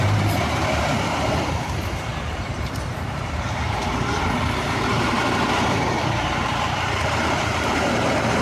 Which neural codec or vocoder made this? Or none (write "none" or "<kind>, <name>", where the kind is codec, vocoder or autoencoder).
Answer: vocoder, BigVGAN v2